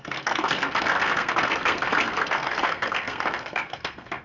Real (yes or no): no